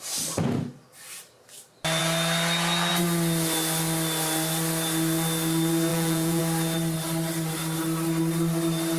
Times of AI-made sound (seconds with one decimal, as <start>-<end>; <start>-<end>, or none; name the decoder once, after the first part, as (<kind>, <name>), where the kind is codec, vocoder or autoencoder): 5.9-6.4 (vocoder, Vocos)